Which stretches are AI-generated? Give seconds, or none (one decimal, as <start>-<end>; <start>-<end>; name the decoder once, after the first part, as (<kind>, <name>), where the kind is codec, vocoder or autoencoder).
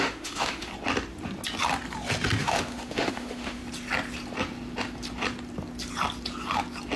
0.0-0.7 (autoencoder, DAC-VAE); 2.4-3.6